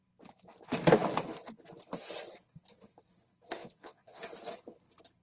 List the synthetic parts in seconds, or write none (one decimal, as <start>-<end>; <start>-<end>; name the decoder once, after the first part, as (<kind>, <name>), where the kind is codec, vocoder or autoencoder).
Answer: 3.6-4.2 (vocoder, Vocos)